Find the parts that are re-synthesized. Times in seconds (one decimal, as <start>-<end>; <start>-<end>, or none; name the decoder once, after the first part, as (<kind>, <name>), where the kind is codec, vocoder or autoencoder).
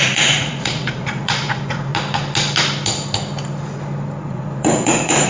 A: 0.0-1.9 (vocoder, Vocos); 4.2-5.3